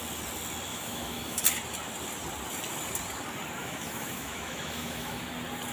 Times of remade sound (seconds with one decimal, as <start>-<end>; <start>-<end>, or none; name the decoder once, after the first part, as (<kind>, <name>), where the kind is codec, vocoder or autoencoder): 0.7-1.4 (autoencoder, DAC-VAE); 3.6-5.2